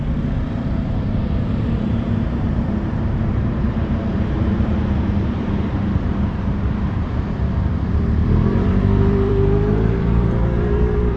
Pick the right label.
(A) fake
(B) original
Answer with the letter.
A